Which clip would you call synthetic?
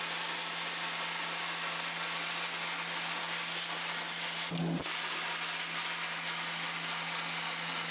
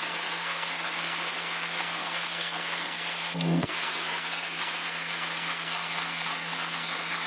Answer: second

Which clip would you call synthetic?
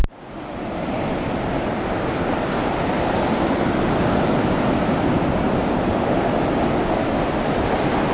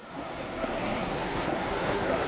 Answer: second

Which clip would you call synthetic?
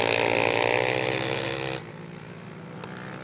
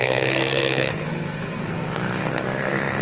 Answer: second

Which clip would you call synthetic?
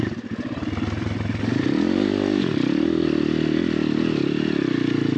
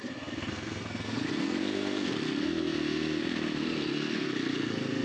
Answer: second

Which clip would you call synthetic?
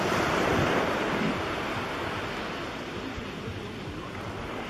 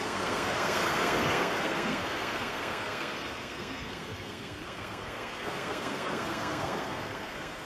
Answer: second